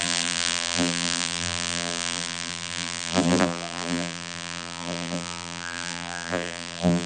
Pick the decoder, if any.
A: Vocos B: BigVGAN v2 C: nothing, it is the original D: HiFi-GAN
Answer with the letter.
B